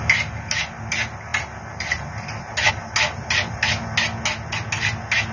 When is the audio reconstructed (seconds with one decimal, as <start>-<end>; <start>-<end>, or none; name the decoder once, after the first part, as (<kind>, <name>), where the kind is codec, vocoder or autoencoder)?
none